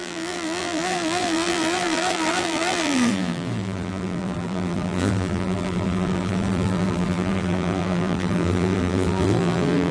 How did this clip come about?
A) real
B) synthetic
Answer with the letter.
B